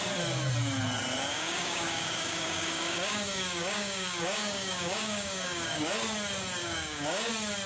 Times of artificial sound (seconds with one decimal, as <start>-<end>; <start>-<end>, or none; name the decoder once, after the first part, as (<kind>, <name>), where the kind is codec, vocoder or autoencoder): 1.3-5.9 (codec, DAC); 6.6-7.3